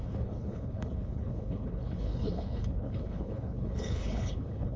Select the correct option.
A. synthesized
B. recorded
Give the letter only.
A